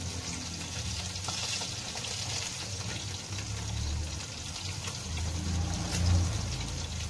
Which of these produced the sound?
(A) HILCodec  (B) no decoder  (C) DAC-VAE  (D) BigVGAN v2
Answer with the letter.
B